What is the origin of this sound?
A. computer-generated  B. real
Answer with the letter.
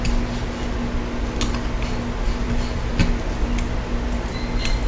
B